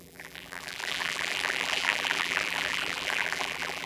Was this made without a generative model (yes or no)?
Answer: no